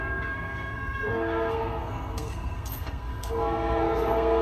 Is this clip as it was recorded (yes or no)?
no